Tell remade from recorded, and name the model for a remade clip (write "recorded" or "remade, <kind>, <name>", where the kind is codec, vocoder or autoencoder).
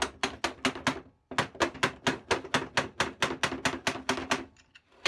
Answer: recorded